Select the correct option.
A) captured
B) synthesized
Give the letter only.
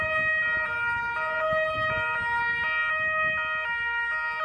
A